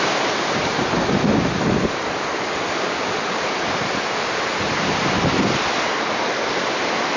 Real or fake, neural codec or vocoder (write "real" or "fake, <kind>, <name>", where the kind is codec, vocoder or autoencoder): real